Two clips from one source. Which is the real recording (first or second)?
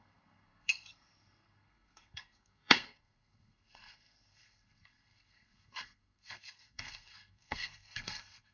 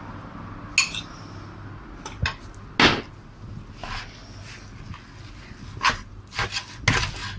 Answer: second